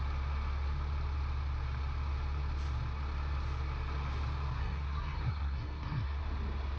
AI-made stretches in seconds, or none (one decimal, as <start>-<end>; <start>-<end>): 4.6-6.2